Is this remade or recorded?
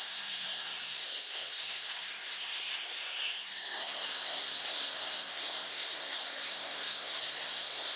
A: remade